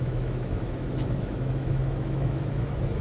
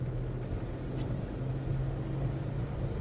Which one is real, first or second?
second